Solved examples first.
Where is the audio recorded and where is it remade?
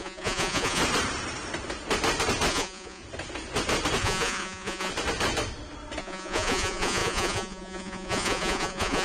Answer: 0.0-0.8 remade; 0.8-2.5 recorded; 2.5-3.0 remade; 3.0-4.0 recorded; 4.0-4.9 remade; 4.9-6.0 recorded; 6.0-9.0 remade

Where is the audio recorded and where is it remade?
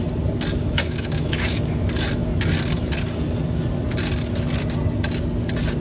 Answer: 0.0-0.6 recorded; 0.6-1.6 remade; 1.6-5.8 recorded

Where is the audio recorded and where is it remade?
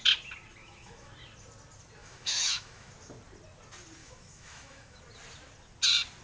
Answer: 0.0-0.6 recorded; 0.6-1.1 remade; 1.1-2.0 recorded; 2.0-2.9 remade; 2.9-4.0 recorded; 4.0-5.0 remade; 5.0-6.2 recorded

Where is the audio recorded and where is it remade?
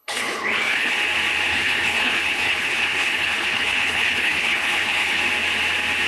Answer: 0.0-1.0 remade; 1.0-1.5 recorded; 1.5-5.2 remade; 5.2-6.1 recorded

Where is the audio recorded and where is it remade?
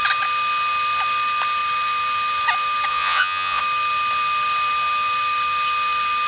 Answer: 0.0-2.9 recorded; 2.9-3.6 remade; 3.6-6.3 recorded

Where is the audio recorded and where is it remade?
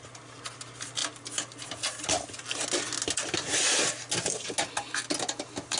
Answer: 0.0-5.8 recorded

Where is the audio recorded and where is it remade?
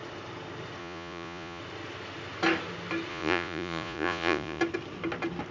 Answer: 0.0-0.8 recorded; 0.8-1.6 remade; 1.6-3.1 recorded; 3.1-4.6 remade; 4.6-5.5 recorded